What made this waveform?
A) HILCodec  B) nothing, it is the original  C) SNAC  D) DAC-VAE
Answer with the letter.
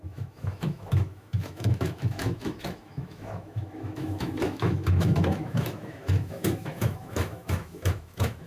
D